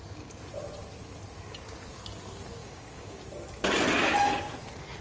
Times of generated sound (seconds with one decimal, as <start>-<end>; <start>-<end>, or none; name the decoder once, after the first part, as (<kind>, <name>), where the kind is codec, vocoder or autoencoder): 2.6-3.2 (codec, DAC)